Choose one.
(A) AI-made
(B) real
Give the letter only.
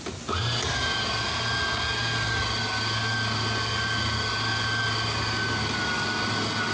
B